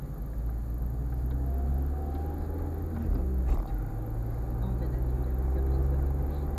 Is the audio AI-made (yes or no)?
no